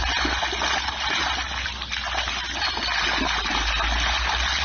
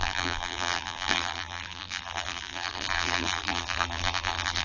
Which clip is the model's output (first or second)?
second